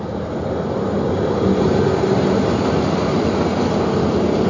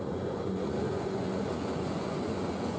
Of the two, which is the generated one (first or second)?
second